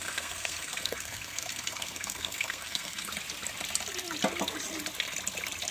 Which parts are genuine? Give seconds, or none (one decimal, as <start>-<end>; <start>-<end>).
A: 3.1-5.7